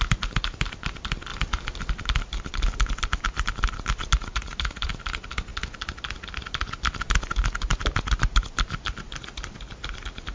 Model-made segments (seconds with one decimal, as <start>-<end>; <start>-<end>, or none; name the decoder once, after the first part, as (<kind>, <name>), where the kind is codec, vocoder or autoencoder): 4.3-4.9 (vocoder, Vocos)

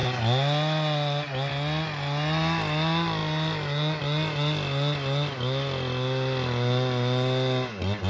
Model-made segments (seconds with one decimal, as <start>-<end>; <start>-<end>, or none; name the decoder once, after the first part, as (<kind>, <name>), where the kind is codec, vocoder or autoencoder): none

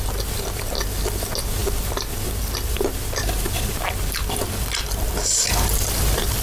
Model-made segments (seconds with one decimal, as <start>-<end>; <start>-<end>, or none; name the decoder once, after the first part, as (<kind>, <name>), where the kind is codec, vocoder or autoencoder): none

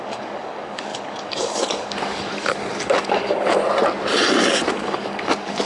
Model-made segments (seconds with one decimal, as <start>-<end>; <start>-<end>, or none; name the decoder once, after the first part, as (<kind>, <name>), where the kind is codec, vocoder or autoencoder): 0.0-3.6 (codec, DAC); 4.7-5.7

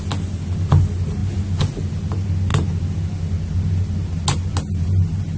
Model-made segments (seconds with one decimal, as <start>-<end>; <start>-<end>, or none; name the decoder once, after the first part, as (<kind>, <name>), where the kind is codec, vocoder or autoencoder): none

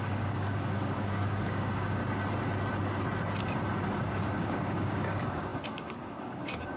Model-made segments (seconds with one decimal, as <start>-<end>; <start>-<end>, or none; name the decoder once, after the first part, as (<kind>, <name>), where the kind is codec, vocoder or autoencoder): 0.0-2.0 (codec, DAC); 4.1-6.8

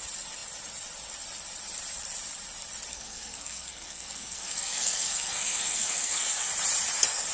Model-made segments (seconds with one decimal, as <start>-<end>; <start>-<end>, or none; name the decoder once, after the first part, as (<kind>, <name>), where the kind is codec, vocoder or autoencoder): 2.9-6.5 (codec, SNAC)

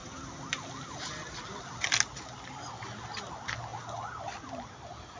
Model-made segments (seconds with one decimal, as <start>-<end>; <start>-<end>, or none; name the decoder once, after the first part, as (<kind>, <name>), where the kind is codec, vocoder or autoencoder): none